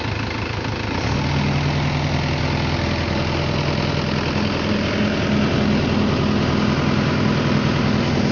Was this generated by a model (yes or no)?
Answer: no